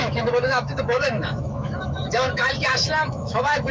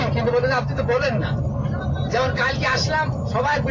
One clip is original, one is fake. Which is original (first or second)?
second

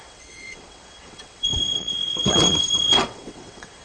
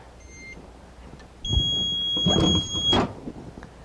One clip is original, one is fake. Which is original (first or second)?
second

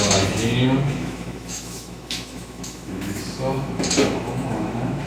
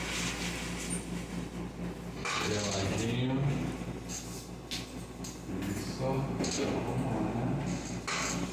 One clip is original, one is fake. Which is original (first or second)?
second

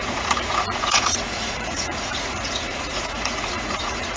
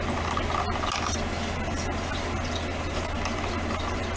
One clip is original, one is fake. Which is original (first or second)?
second